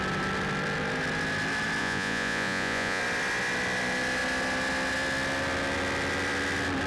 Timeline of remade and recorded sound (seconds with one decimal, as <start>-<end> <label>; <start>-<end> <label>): 0.0-1.8 recorded; 1.8-3.0 remade; 3.0-6.9 recorded